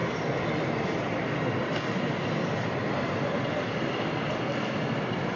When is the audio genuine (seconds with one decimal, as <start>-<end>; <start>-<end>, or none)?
0.0-5.4